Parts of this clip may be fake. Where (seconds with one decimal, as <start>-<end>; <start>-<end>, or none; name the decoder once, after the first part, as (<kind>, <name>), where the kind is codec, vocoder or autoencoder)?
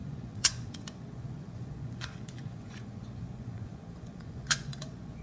0.0-5.2 (vocoder, Vocos)